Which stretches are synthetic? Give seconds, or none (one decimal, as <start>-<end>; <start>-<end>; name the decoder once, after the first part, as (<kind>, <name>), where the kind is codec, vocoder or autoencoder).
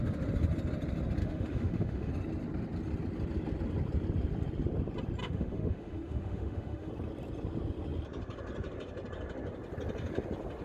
1.2-2.1 (autoencoder, DAC-VAE); 5.2-6.9